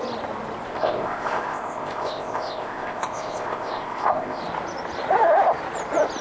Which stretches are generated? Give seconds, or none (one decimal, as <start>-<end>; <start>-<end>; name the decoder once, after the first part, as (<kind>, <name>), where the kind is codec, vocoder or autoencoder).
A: 0.7-4.4 (codec, ZipCodec)